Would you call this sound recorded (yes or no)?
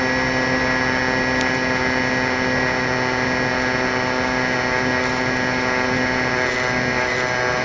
yes